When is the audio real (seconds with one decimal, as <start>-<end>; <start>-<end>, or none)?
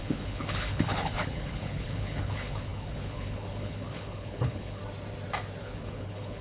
4.8-5.6